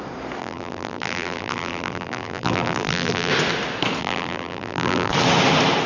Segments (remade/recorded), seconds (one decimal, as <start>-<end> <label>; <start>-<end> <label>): 0.0-0.4 recorded; 0.4-3.3 remade; 3.3-4.0 recorded; 4.0-5.1 remade; 5.1-5.9 recorded